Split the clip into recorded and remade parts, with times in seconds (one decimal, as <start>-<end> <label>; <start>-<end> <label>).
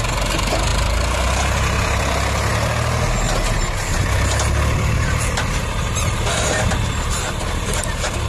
0.0-0.7 recorded; 0.7-1.4 remade; 1.4-8.3 recorded